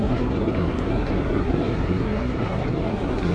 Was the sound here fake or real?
fake